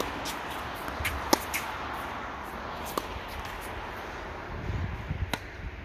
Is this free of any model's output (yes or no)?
yes